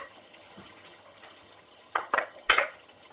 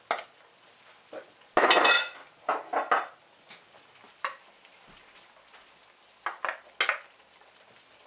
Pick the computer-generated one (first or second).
first